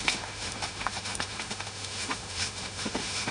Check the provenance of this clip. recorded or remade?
remade